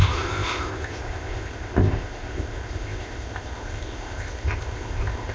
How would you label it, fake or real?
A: fake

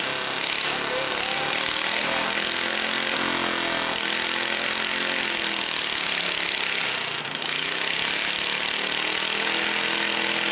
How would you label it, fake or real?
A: real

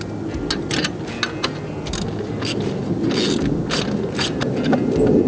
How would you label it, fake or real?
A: real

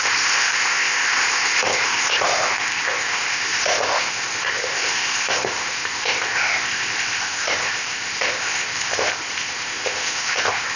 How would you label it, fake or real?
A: fake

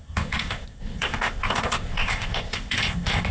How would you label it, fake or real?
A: fake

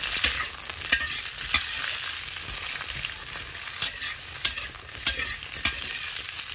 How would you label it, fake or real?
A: real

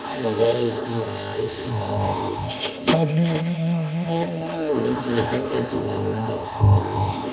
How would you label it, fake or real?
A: fake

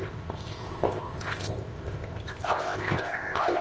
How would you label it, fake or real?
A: fake